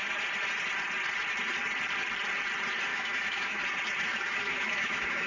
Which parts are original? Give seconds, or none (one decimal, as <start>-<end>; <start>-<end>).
0.0-2.9; 3.6-4.1